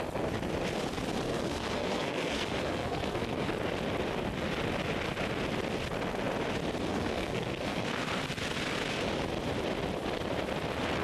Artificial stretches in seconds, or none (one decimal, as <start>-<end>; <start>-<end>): 1.3-3.5; 6.9-8.0

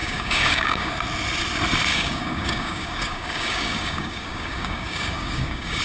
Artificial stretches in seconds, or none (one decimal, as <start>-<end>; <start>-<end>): 0.0-0.9; 1.9-5.8

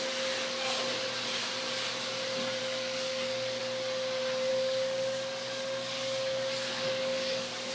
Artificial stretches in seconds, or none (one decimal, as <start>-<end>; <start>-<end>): 2.6-3.6; 4.5-7.7

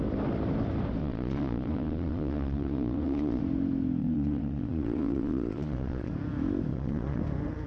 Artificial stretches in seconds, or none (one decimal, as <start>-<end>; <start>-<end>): 1.0-3.4; 4.0-6.1; 6.7-7.2

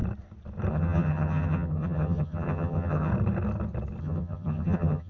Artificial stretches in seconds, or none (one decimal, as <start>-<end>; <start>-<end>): 0.7-3.1; 4.0-5.1

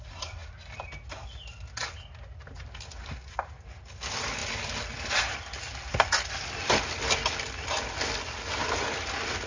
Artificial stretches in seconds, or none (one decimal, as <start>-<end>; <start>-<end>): none